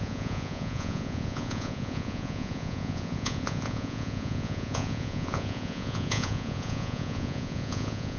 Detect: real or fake fake